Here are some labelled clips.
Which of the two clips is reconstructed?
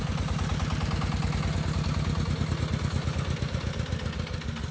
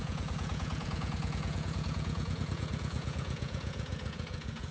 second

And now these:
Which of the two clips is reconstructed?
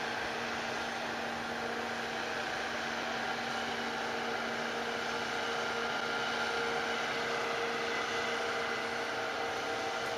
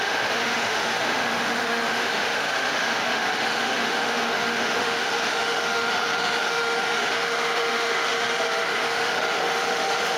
second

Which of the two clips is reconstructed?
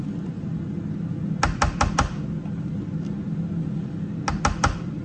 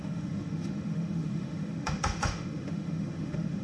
second